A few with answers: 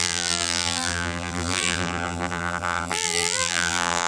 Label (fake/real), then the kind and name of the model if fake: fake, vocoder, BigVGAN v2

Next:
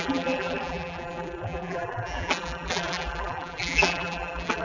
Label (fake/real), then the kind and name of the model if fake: fake, vocoder, BigVGAN v2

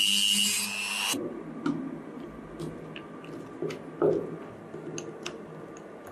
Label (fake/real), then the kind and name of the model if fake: real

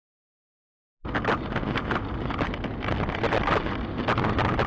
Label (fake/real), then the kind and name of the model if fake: real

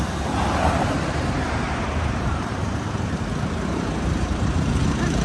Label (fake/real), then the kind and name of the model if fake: fake, vocoder, BigVGAN v2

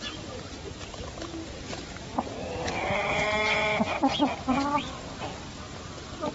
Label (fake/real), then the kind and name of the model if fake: real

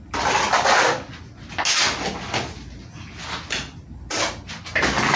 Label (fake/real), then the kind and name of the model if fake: real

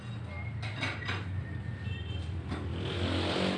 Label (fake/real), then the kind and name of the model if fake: real